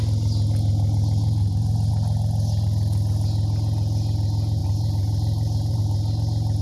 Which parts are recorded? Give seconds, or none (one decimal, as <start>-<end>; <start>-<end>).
0.0-1.2; 1.9-4.6; 5.8-6.6